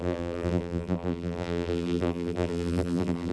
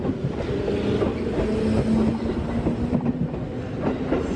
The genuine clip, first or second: second